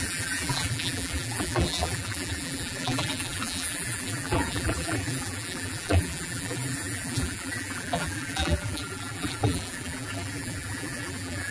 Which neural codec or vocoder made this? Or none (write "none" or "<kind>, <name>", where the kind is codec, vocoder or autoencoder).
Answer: vocoder, BigVGAN v2